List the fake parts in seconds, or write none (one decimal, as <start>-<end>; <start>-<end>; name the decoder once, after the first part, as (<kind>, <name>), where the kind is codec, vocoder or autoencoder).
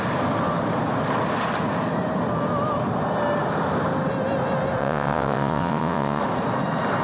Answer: 4.8-6.2 (vocoder, WaveNeXt)